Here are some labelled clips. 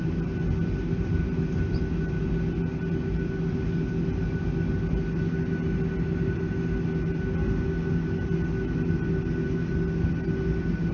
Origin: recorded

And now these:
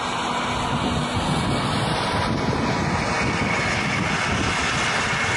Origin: recorded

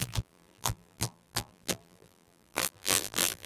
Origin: remade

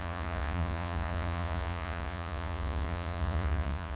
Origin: remade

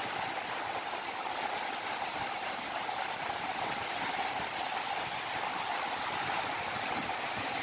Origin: recorded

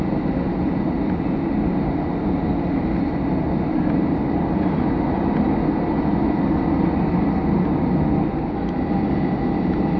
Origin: recorded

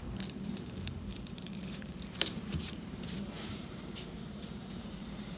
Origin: remade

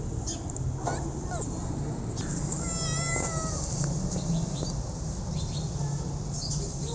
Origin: recorded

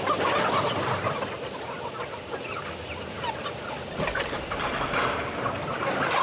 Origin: recorded